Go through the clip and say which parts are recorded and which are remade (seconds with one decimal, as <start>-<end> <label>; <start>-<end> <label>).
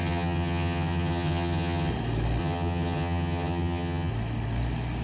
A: 0.0-1.9 remade; 1.9-2.4 recorded; 2.4-4.1 remade; 4.1-5.0 recorded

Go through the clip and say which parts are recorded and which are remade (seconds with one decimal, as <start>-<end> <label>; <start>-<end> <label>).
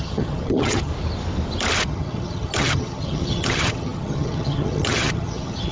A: 0.0-0.9 remade; 0.9-1.8 recorded; 1.8-5.7 remade